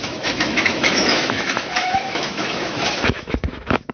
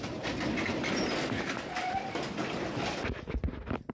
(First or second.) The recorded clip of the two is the second